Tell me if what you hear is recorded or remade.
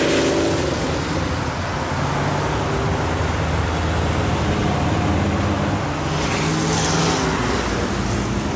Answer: recorded